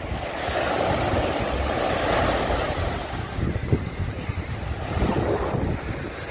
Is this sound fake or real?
real